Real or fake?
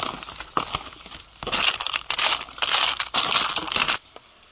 real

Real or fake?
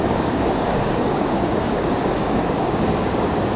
fake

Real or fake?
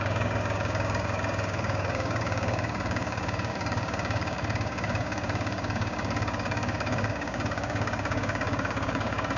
fake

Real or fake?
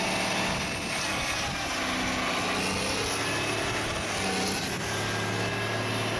real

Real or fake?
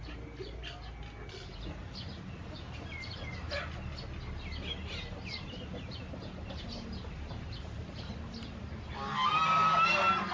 real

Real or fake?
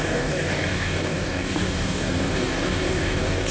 fake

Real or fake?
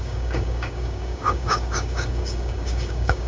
fake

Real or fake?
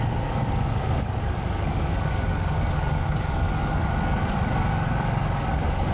fake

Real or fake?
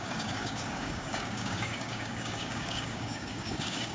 fake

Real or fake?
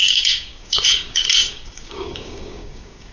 fake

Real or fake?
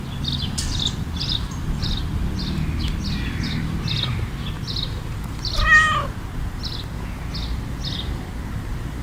real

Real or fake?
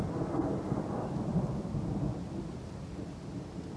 real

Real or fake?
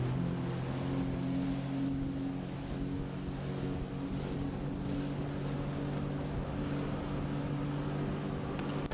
real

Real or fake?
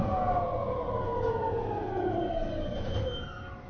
real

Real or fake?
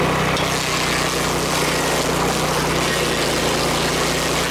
real